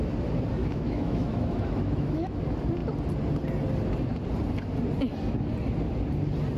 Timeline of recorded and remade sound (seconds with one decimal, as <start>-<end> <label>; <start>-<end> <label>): 0.0-0.6 recorded; 0.6-2.4 remade; 2.4-6.6 recorded